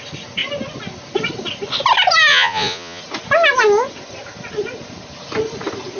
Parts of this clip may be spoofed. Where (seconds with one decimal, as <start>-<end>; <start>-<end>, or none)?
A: 2.3-3.0